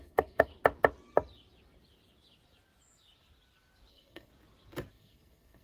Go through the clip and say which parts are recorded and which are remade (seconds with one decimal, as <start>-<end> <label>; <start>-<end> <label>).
0.0-0.5 remade; 0.5-3.9 recorded; 3.9-4.3 remade; 4.3-4.9 recorded; 4.9-5.6 remade

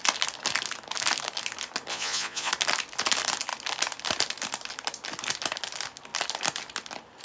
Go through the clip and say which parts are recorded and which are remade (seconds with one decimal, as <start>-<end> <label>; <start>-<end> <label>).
0.0-1.9 recorded; 1.9-2.5 remade; 2.5-7.2 recorded

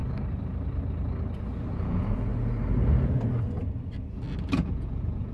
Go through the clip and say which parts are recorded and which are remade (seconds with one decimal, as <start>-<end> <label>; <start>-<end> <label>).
0.0-1.7 recorded; 1.7-2.3 remade; 2.3-4.5 recorded; 4.5-5.3 remade